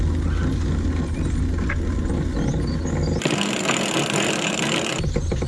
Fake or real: real